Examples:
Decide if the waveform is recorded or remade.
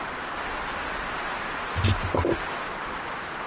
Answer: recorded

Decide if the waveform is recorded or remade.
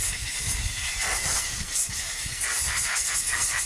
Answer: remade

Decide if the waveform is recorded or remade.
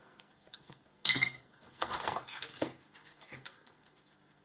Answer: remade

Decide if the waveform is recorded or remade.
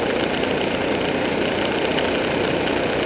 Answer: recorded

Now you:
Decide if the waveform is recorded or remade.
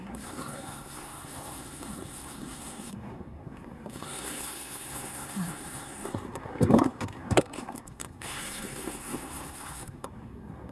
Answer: remade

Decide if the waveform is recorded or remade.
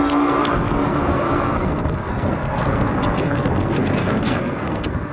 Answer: remade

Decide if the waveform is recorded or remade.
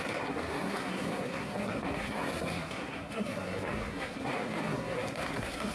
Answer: remade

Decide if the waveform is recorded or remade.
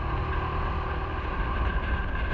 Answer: recorded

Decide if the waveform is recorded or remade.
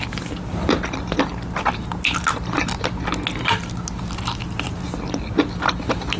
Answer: recorded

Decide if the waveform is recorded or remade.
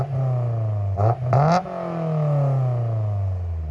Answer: recorded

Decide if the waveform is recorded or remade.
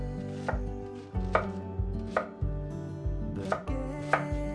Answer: recorded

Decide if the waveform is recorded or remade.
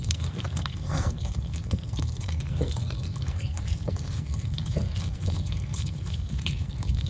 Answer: remade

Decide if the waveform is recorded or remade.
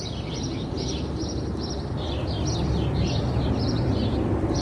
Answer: recorded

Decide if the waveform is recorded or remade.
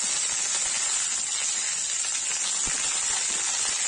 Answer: recorded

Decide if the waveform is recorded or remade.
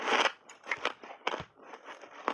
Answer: recorded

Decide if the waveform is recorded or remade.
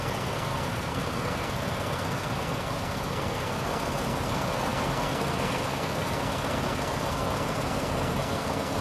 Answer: remade